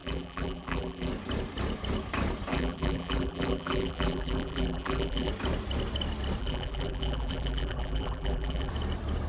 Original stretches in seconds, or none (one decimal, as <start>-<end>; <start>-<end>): 1.1-2.5; 5.3-6.4; 8.7-9.3